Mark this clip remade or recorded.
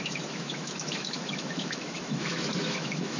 remade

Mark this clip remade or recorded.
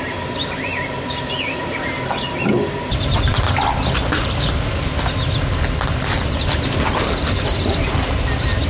recorded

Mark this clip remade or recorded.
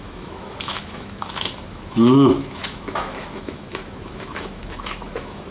remade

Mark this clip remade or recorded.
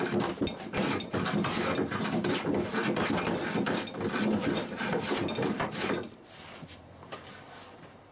recorded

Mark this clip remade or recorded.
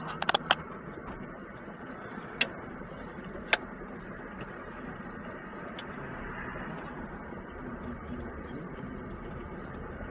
recorded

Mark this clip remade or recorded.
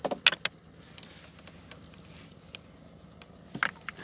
recorded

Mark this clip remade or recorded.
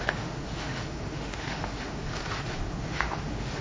remade